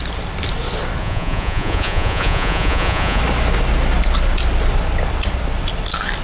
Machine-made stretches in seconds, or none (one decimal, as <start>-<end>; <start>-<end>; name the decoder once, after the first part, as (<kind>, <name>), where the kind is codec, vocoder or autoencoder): 1.0-3.2 (vocoder, Vocos)